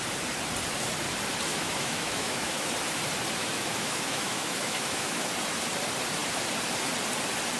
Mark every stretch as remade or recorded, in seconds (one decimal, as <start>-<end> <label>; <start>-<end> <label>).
0.0-1.5 recorded; 1.5-2.7 remade; 2.7-3.4 recorded; 3.4-5.3 remade; 5.3-7.6 recorded